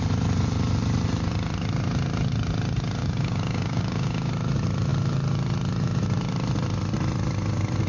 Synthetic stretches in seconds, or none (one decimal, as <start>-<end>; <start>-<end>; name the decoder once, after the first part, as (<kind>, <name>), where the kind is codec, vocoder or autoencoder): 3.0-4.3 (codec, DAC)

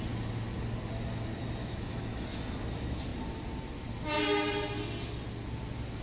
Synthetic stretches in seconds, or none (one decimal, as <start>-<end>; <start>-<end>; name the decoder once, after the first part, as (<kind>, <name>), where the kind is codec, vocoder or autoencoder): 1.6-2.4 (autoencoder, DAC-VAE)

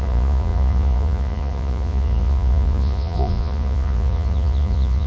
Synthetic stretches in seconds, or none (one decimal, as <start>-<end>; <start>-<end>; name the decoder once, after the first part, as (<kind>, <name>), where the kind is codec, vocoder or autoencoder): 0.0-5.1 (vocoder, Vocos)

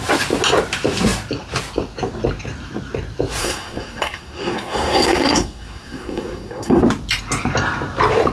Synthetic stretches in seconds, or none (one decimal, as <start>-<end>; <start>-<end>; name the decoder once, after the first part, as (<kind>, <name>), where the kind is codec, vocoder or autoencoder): 3.4-6.8 (codec, SNAC)

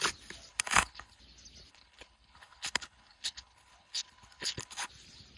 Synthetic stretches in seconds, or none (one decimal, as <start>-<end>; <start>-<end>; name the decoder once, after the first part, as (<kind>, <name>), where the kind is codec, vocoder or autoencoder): 0.5-1.2 (codec, HILCodec); 1.7-4.9